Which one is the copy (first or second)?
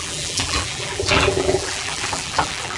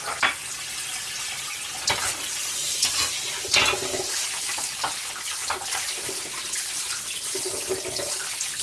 first